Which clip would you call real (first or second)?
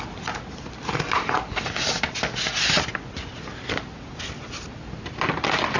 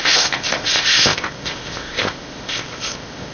first